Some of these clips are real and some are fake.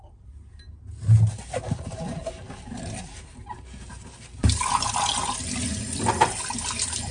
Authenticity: real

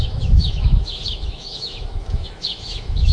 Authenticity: fake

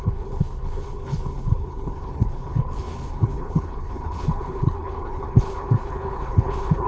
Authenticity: fake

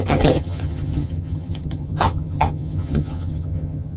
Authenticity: fake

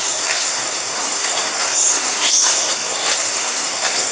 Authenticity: fake